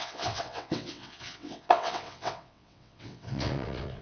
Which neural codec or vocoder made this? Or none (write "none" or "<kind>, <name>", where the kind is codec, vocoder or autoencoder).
vocoder, WaveNeXt